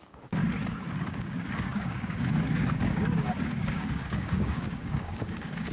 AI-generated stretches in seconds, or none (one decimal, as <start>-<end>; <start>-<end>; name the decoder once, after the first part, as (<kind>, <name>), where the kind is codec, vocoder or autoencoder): 0.0-0.4 (codec, DAC); 1.0-5.7